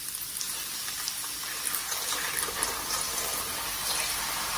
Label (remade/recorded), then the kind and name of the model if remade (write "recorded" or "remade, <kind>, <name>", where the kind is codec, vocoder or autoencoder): recorded